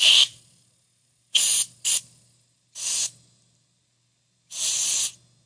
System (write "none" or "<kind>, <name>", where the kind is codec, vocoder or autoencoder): none